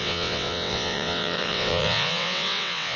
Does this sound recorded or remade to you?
remade